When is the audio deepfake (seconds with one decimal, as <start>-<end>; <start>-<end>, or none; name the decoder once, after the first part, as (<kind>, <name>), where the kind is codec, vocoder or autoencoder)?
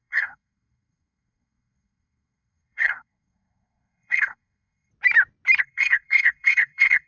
0.0-4.9 (codec, SNAC); 5.6-7.1